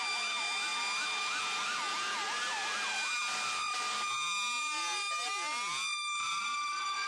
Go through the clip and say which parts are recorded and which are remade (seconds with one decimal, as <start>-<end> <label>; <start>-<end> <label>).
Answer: 0.0-7.1 recorded